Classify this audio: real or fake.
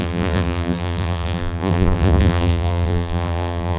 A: fake